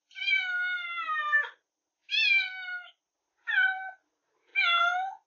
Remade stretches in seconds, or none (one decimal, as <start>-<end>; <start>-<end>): none